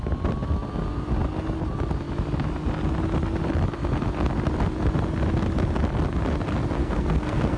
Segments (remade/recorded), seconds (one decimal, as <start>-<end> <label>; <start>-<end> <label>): 0.0-6.8 recorded; 6.8-7.6 remade